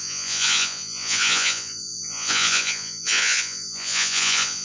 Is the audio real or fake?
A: fake